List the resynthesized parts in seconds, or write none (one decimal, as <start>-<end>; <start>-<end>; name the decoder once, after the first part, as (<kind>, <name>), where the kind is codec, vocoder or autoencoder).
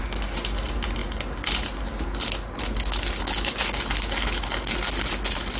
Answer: none